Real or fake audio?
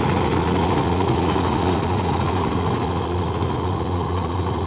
fake